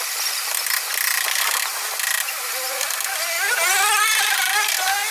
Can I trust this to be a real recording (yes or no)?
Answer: yes